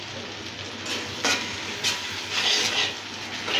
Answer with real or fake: real